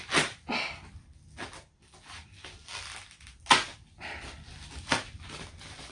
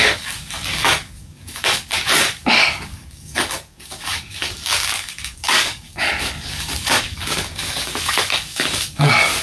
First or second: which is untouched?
first